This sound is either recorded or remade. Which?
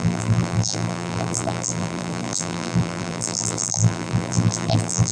remade